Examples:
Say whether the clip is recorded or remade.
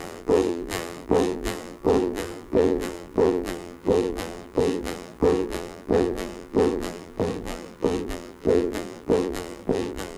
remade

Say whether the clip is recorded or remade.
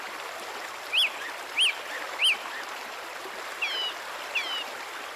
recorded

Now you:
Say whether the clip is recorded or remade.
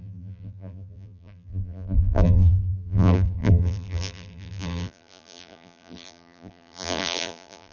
remade